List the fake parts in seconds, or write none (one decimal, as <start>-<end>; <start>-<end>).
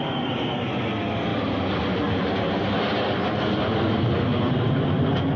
none